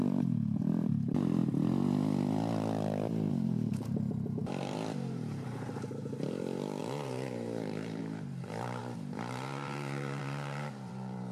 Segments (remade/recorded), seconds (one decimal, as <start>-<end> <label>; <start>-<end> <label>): 0.0-1.4 remade; 1.4-3.3 recorded; 3.3-11.3 remade